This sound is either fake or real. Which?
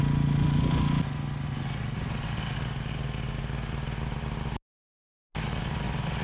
real